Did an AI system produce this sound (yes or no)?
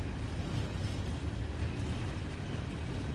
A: no